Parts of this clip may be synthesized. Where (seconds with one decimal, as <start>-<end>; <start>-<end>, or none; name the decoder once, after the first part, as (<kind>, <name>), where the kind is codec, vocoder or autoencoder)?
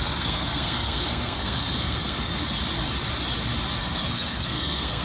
0.0-2.4 (codec, SNAC); 3.8-5.0